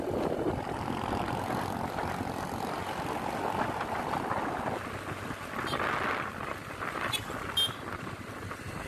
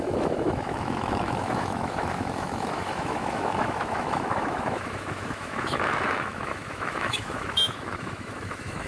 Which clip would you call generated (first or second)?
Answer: second